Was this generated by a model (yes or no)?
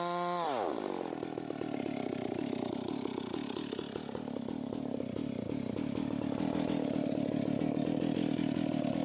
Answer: no